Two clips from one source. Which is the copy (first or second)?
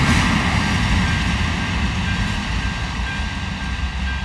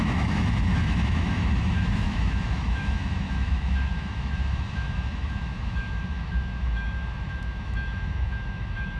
second